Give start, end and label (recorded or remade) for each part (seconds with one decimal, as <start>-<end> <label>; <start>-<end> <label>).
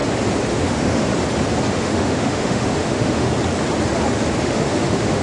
0.0-0.5 recorded; 0.5-1.1 remade; 1.1-1.7 recorded; 1.7-3.3 remade; 3.3-4.4 recorded; 4.4-5.2 remade